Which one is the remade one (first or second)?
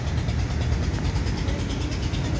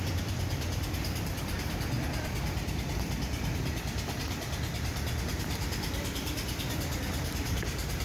second